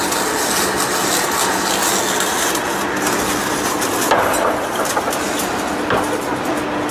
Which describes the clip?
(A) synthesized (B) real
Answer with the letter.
B